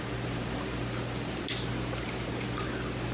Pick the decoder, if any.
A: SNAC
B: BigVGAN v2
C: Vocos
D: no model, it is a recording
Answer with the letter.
D